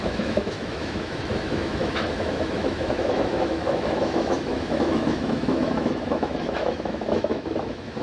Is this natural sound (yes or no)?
no